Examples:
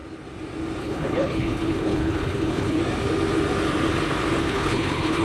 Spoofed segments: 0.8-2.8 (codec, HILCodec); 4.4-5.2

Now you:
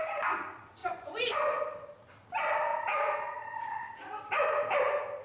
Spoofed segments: 0.8-1.4 (vocoder, Vocos)